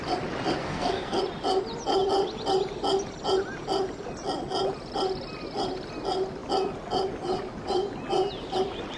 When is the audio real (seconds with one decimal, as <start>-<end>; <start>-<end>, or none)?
0.0-0.6; 1.2-9.0